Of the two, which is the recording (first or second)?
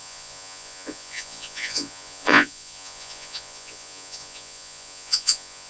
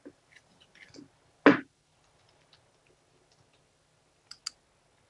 second